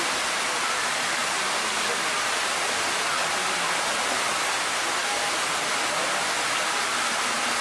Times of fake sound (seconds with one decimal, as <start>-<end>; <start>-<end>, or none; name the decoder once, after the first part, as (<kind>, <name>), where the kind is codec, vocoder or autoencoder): none